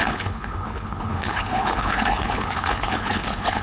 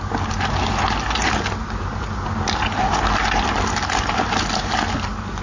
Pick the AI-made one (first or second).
first